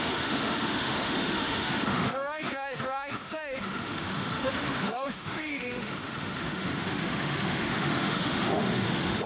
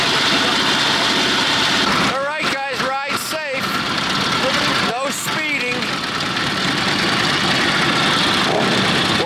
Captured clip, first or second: second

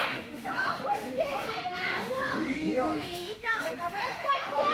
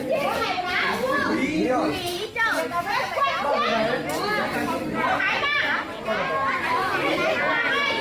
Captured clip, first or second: second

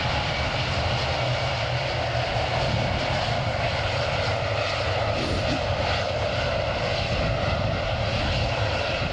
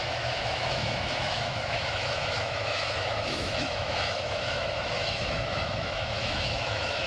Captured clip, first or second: first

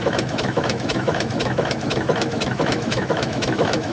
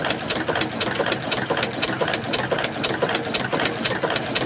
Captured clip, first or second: second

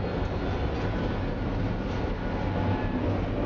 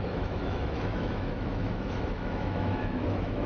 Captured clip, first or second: first